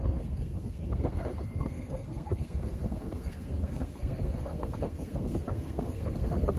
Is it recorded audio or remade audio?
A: remade